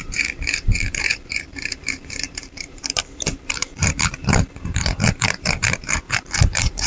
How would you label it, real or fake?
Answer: fake